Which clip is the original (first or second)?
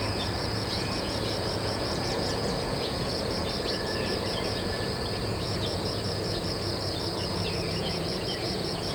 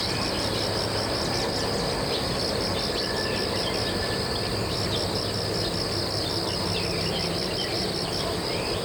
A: second